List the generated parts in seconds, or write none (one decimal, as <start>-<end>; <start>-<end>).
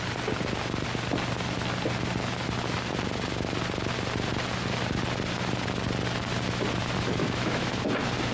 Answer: 7.2-7.7